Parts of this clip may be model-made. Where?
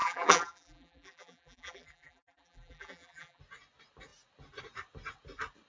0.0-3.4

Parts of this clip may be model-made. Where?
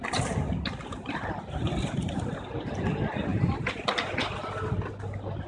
none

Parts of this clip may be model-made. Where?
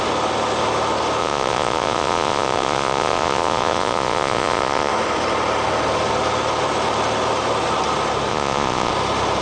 1.2-4.9; 8.3-8.9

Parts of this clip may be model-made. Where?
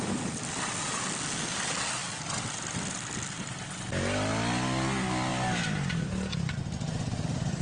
none